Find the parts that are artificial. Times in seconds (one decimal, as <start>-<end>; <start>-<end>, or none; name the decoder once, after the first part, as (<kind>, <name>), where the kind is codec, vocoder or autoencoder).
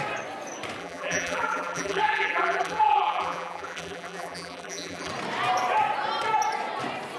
0.8-5.1 (vocoder, BigVGAN v2)